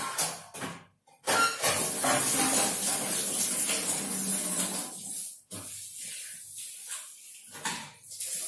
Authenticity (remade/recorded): recorded